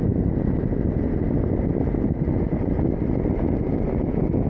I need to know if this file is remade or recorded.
recorded